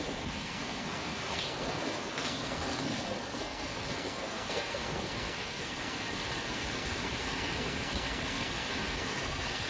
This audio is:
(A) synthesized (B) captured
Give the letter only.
A